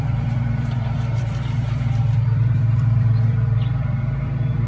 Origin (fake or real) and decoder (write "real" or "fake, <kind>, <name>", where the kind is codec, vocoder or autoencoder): fake, vocoder, BigVGAN v2